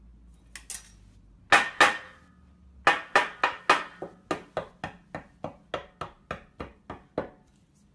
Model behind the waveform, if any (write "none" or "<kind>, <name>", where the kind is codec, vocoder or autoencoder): none